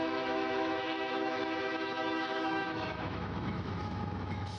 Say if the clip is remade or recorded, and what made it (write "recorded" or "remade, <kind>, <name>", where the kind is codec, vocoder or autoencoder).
remade, autoencoder, DAC-VAE